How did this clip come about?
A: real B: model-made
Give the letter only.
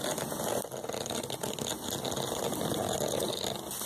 A